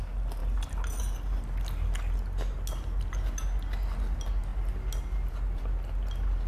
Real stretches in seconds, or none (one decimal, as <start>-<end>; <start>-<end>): 0.0-6.5